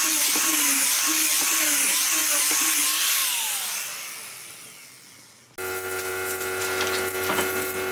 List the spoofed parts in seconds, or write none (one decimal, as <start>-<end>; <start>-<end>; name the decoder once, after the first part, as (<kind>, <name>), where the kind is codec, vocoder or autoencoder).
none